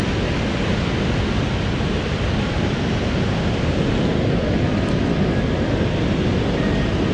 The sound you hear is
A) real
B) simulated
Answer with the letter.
A